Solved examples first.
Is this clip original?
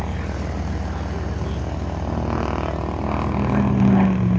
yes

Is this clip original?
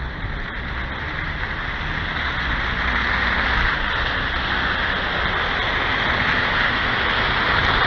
yes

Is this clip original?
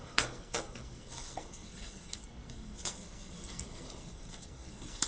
no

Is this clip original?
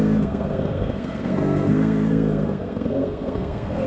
no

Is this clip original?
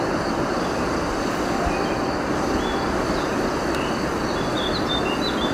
yes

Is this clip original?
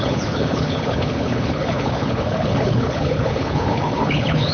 no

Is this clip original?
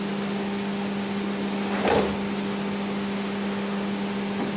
yes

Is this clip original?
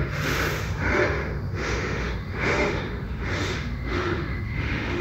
no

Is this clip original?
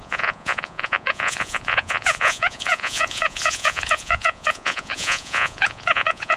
no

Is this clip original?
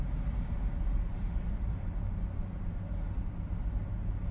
yes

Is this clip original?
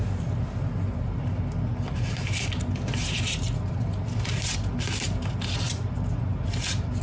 yes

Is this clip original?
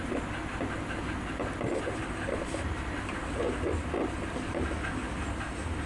yes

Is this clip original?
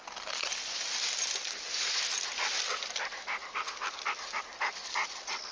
yes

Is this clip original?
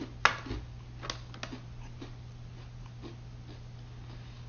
yes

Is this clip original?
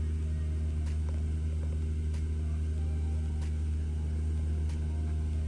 yes